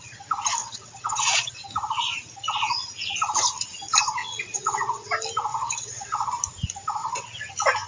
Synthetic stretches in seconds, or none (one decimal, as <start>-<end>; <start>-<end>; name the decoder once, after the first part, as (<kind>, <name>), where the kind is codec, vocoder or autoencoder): 0.6-1.5 (vocoder, WaveNeXt); 4.2-5.1; 5.5-6.3; 7.0-7.5